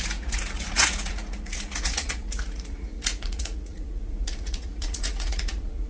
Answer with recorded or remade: remade